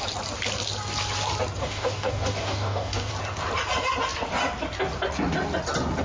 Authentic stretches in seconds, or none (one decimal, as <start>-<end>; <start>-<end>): 0.0-1.6; 3.1-6.0